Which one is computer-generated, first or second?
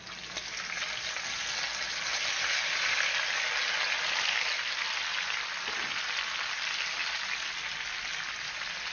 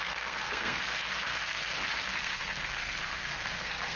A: second